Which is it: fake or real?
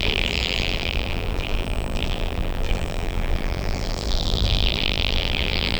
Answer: fake